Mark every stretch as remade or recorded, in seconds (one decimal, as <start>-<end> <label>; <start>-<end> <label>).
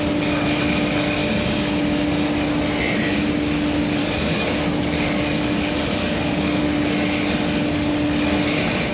0.0-4.0 recorded; 4.0-6.6 remade; 6.6-8.9 recorded